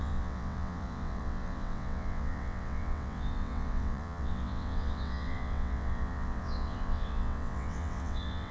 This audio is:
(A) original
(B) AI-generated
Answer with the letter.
B